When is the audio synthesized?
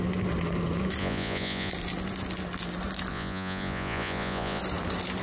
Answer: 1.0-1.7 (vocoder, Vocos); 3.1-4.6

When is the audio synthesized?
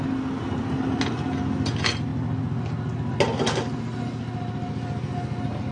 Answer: none